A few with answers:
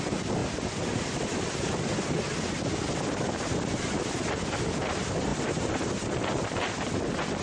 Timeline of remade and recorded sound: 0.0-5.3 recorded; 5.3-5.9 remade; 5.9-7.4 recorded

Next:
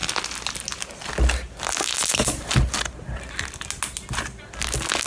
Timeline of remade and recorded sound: 0.0-5.1 recorded

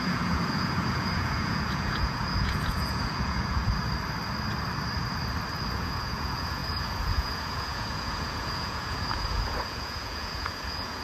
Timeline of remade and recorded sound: 0.0-3.6 remade; 3.6-5.7 recorded; 5.7-11.0 remade